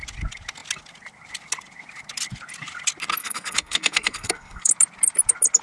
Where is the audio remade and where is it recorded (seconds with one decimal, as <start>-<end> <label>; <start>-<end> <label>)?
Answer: 0.0-3.2 recorded; 3.2-4.7 remade; 4.7-5.6 recorded